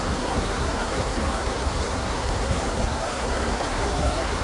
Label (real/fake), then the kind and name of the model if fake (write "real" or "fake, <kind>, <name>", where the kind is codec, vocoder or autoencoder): fake, codec, SNAC